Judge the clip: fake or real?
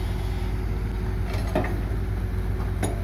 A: real